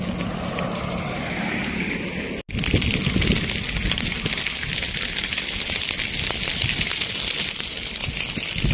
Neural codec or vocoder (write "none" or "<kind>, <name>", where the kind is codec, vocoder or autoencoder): none